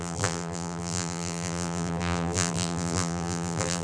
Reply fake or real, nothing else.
fake